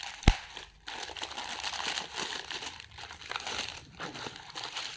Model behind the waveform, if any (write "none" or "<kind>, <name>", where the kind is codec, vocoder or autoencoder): vocoder, BigVGAN v2